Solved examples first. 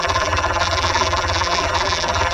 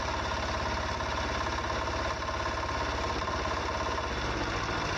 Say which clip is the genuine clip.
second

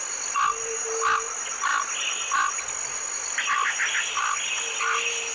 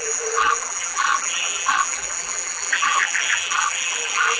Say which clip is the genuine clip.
first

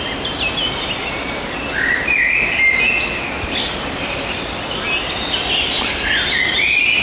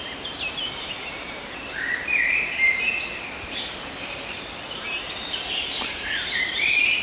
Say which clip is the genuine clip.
first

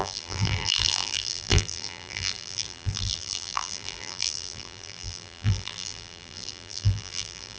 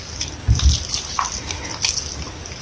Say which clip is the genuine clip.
second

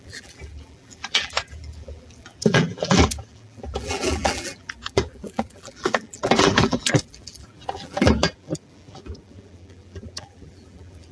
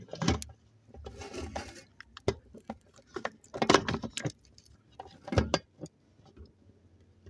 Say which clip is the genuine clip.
second